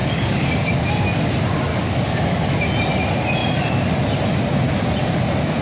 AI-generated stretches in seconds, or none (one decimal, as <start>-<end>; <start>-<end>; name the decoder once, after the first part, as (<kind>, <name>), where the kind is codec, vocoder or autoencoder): 0.0-0.9 (codec, DAC); 1.7-2.5

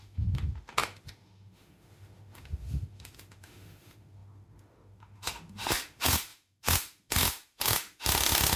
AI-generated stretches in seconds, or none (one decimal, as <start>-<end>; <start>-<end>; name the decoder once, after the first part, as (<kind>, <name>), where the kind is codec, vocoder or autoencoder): 0.0-8.6 (autoencoder, DAC-VAE)

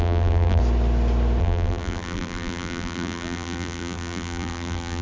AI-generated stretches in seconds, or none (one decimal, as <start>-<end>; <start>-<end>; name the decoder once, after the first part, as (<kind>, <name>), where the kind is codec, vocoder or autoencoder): 0.0-0.6 (vocoder, BigVGAN v2); 1.4-5.0

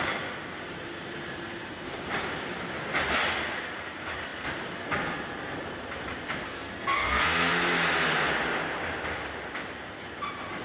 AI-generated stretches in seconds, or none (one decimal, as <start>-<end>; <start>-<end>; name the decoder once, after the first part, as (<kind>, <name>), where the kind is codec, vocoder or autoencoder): 6.5-7.5 (codec, SNAC)

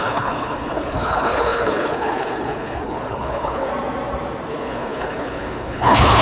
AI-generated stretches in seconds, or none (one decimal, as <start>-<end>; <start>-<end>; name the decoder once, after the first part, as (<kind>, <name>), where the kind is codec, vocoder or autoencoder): 0.0-3.7 (codec, HILCodec); 4.5-6.2

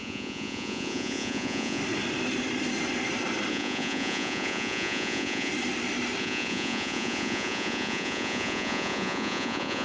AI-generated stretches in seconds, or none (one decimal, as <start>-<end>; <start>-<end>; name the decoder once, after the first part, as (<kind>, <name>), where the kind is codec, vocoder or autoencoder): 0.0-1.8 (vocoder, Vocos); 3.5-5.5; 6.2-9.8